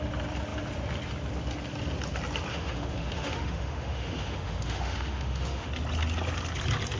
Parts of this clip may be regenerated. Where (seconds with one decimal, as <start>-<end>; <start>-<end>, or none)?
2.5-5.7